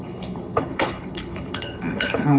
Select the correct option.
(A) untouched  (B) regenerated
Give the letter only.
B